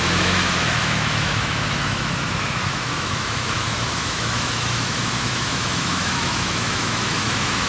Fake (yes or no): yes